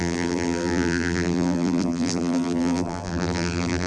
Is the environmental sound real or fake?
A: fake